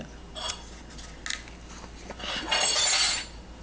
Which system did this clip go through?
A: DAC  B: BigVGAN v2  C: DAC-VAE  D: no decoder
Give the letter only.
D